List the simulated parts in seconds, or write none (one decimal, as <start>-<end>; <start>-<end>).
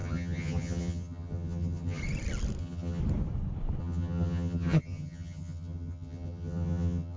0.0-2.0; 2.6-3.0; 3.8-7.2